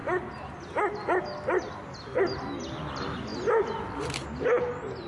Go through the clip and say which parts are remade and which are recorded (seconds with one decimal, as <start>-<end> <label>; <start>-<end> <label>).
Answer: 0.0-5.1 recorded